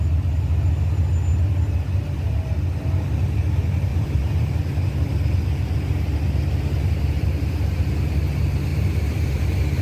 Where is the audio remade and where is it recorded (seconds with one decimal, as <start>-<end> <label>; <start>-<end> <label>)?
0.0-3.9 recorded; 3.9-4.6 remade; 4.6-8.7 recorded; 8.7-9.8 remade